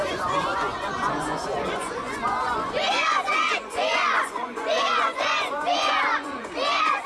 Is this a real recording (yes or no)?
no